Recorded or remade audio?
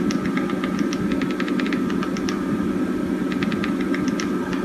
recorded